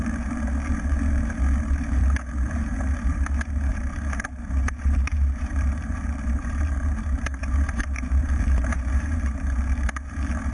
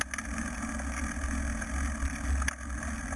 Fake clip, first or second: first